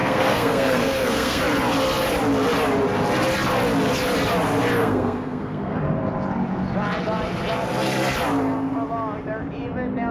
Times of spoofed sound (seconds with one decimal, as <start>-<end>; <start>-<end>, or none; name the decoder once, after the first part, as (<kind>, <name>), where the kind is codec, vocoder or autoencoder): 0.0-1.4 (codec, SNAC); 4.8-5.8

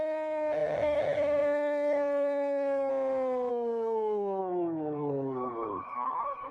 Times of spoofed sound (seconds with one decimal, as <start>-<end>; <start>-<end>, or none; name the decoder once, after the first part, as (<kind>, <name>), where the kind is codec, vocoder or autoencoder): 0.0-2.9 (codec, SNAC); 3.5-6.5

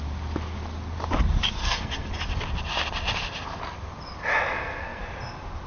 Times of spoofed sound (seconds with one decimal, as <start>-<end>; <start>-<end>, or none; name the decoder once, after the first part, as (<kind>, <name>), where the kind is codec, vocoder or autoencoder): 1.6-2.1 (codec, SNAC); 4.5-5.0

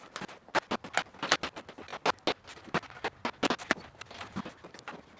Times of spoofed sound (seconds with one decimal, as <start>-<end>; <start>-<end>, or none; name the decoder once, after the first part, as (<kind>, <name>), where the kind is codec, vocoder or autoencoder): none

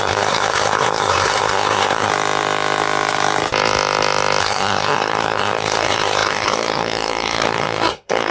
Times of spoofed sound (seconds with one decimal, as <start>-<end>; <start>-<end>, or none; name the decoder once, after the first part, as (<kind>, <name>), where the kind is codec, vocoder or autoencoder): 0.0-2.1 (codec, SNAC); 4.4-8.3

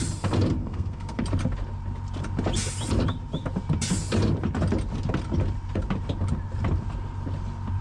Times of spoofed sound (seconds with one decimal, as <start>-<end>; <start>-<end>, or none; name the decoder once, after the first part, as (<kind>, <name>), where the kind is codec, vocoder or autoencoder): 0.6-1.2 (codec, SNAC)